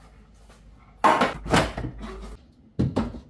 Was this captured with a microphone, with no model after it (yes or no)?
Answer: yes